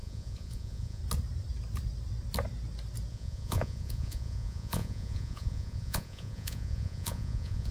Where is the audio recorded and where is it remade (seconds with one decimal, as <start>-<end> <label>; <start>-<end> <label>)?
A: 0.0-1.0 remade; 1.0-3.1 recorded; 3.1-7.7 remade